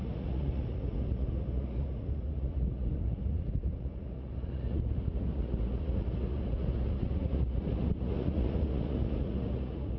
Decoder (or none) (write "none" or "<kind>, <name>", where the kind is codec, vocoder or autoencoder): vocoder, Vocos